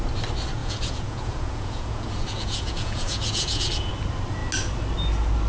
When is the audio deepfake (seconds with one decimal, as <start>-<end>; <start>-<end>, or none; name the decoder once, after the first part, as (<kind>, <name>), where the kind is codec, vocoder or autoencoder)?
0.6-3.9 (vocoder, Vocos)